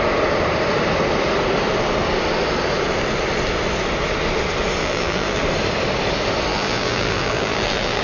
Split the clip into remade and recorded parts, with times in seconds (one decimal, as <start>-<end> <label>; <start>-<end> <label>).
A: 0.0-4.8 recorded; 4.8-5.4 remade; 5.4-6.5 recorded; 6.5-8.0 remade